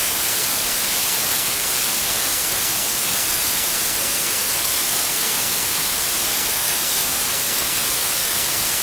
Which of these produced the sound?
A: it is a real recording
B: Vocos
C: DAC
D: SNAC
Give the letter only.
D